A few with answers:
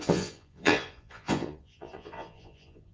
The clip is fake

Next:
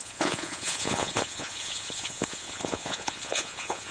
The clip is fake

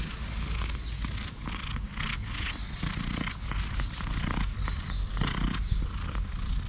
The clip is real